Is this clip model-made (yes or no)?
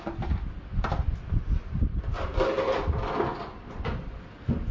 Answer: no